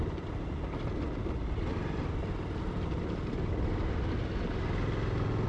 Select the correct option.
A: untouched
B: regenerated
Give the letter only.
A